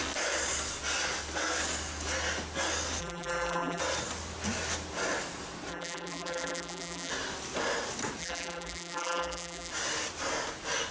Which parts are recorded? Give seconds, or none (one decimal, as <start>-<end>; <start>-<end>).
0.0-3.0; 3.8-5.7; 7.1-8.2; 9.7-10.9